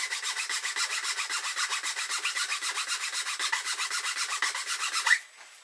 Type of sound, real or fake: real